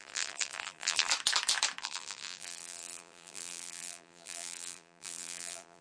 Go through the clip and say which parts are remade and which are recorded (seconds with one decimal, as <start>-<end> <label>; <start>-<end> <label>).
0.0-1.1 remade; 1.1-1.8 recorded; 1.8-5.8 remade